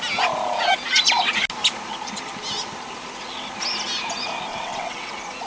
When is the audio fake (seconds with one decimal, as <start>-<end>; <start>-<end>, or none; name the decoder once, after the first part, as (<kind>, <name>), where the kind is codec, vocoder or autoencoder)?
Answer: 4.5-5.1 (vocoder, WaveNeXt)